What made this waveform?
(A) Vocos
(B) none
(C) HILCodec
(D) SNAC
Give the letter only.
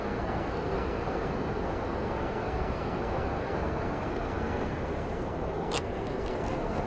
D